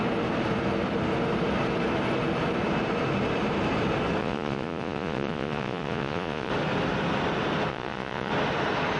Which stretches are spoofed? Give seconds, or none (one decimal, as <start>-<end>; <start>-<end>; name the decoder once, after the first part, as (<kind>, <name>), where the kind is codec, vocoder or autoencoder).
4.2-6.5 (vocoder, Vocos); 7.7-8.3